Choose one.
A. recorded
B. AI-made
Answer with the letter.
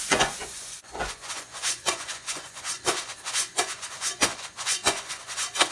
B